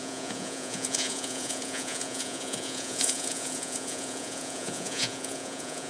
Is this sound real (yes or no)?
no